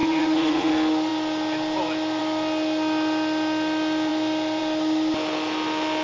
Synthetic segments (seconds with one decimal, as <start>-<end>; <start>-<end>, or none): 0.0-0.7